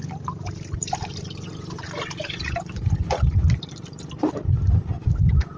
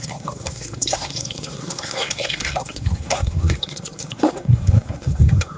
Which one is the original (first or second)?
first